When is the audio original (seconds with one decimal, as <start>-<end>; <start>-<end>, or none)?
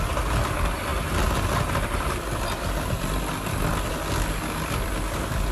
0.0-5.5